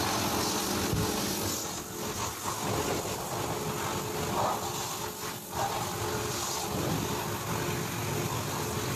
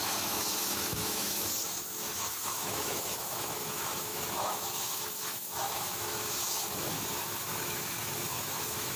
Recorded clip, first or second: first